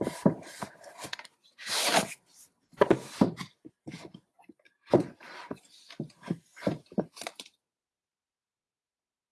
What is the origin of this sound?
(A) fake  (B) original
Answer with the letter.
A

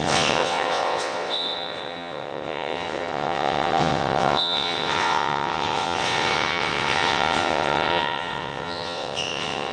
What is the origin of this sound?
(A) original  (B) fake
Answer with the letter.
B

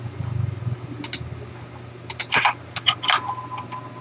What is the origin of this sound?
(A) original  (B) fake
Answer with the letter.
A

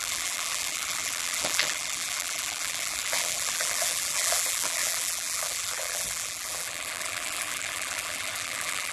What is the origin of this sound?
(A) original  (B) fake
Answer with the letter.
B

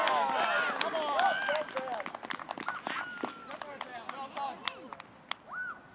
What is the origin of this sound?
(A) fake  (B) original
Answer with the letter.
B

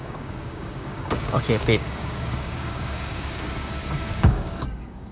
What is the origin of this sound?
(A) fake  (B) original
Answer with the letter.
A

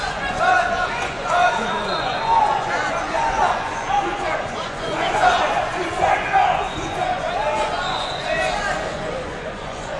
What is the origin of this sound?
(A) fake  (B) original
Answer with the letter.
A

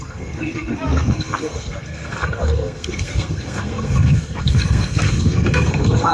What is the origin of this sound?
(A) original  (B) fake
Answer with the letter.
B